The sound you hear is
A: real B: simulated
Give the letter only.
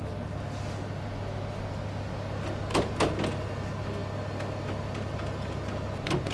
A